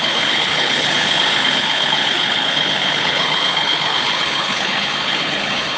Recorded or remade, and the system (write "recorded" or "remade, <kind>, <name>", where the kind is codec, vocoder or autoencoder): remade, codec, HILCodec